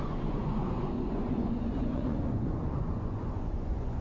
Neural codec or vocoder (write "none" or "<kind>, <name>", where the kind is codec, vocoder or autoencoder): vocoder, Vocos